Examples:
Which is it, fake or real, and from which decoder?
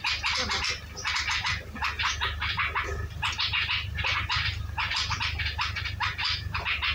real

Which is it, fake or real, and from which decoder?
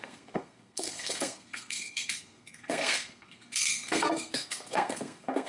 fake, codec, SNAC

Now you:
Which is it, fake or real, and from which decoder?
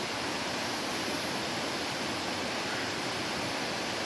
real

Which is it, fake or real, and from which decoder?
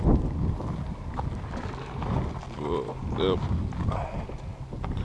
real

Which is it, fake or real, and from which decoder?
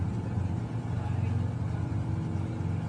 real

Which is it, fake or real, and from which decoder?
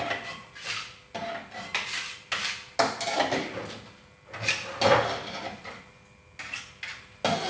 real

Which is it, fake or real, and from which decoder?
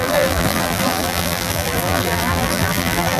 fake, vocoder, BigVGAN v2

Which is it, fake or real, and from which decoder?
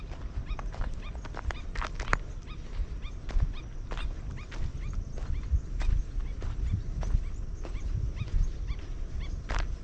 real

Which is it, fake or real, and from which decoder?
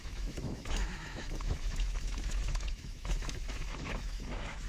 fake, autoencoder, DAC-VAE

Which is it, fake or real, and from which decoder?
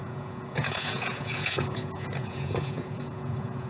fake, vocoder, Vocos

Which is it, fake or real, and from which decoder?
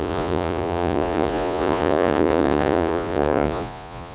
fake, vocoder, Vocos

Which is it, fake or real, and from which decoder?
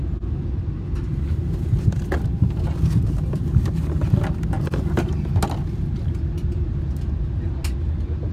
real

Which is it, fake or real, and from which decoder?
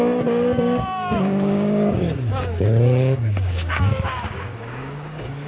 fake, codec, DAC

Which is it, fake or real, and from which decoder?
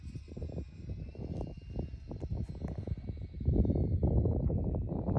real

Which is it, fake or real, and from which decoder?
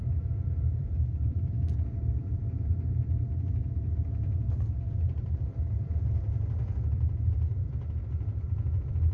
fake, vocoder, BigVGAN v2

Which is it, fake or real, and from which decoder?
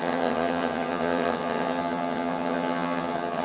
fake, vocoder, HiFi-GAN